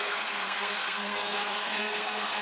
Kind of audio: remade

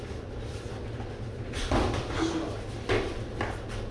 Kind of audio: recorded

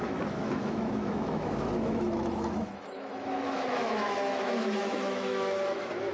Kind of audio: remade